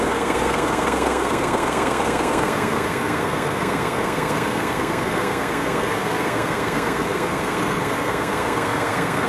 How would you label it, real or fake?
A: fake